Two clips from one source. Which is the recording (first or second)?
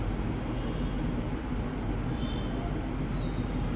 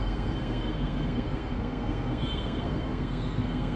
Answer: first